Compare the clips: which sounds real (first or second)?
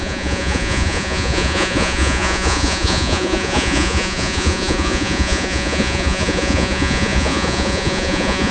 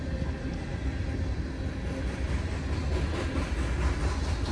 second